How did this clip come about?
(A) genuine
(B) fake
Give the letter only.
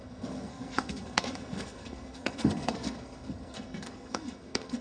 B